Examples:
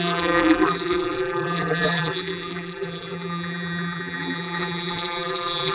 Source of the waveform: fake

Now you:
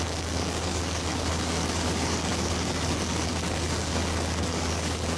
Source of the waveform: fake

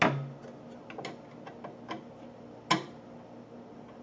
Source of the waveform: real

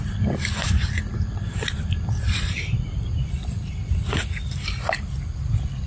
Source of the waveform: fake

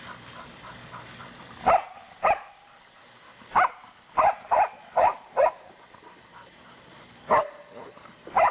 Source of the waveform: real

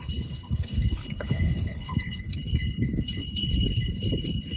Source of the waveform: fake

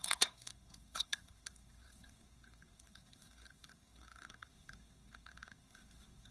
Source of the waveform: fake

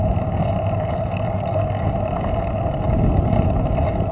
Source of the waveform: real